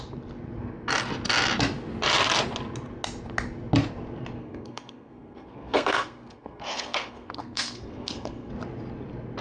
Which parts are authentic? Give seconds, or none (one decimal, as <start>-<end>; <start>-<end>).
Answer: 0.0-4.4; 8.5-9.4